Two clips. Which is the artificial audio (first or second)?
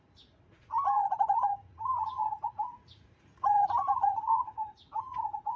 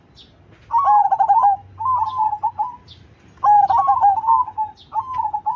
first